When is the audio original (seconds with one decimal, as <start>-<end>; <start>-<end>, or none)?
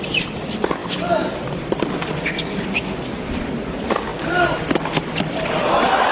0.0-6.1